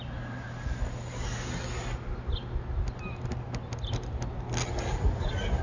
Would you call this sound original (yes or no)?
yes